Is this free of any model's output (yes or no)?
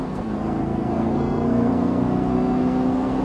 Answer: no